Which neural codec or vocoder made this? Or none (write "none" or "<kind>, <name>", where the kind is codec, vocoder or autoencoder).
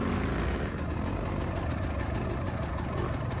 none